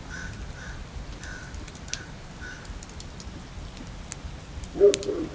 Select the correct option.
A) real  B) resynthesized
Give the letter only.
A